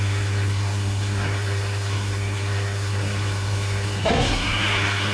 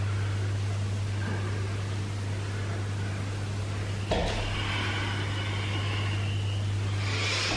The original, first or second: second